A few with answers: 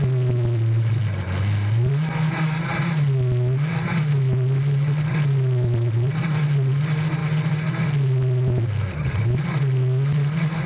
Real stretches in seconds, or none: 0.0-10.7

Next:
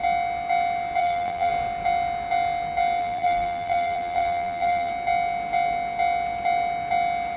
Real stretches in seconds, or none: 0.0-1.0; 1.5-3.0; 4.9-7.4